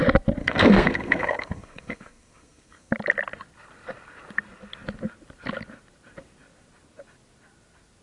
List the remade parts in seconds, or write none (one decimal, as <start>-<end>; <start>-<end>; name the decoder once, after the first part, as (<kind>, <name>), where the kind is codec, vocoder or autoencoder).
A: 0.4-2.9 (codec, SNAC)